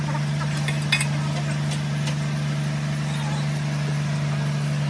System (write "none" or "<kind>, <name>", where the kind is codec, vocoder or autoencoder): none